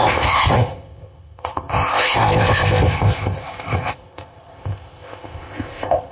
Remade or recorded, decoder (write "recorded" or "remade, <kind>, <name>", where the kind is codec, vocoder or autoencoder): remade, codec, ZipCodec